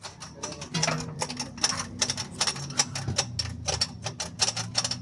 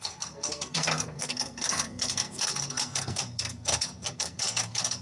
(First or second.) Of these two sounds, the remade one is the second